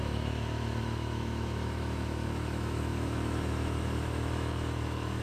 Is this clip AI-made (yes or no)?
yes